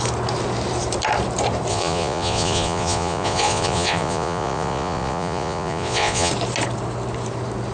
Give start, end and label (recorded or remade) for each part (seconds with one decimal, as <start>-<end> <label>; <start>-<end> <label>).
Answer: 0.0-1.7 recorded; 1.7-6.3 remade; 6.3-7.7 recorded